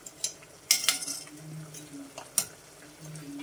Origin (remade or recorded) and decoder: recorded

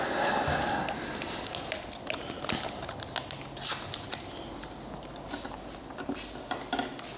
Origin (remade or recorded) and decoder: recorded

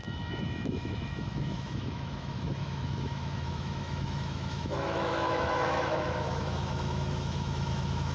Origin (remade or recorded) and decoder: remade, autoencoder, DAC-VAE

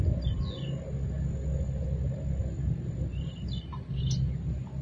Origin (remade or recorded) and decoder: recorded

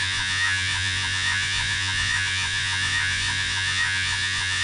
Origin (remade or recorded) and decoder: remade, vocoder, Vocos